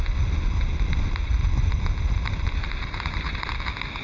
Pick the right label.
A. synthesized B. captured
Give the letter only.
B